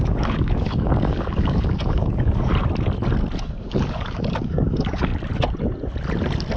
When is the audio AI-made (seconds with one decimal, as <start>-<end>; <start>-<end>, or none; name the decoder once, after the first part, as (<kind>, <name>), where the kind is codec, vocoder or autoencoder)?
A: 0.0-2.5 (codec, DAC); 3.4-5.1